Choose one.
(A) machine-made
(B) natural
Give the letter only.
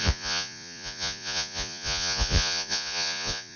A